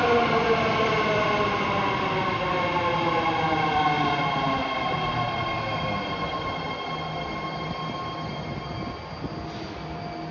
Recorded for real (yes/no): yes